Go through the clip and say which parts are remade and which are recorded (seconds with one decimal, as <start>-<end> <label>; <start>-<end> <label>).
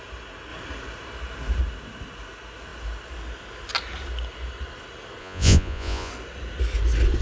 0.0-5.2 recorded; 5.2-6.1 remade; 6.1-7.2 recorded